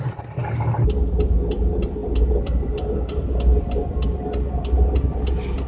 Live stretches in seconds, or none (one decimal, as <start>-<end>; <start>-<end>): 0.0-5.7

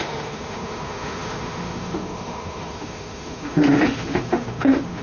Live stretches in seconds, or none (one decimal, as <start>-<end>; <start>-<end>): none

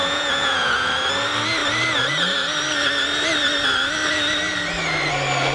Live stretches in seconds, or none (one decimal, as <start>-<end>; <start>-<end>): 0.9-5.5

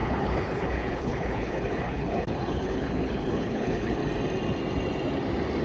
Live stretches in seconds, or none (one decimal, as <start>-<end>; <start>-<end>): 4.0-5.6

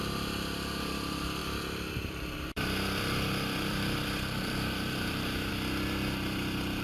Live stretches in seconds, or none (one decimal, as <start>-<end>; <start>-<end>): 0.0-1.4; 5.5-6.8

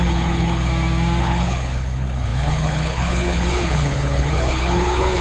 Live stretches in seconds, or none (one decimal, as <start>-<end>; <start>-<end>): 0.7-1.2

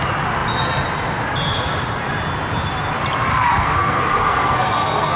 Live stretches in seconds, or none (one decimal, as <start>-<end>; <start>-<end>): 0.0-3.3

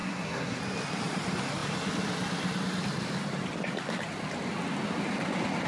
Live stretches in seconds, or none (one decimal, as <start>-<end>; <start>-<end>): 0.6-5.7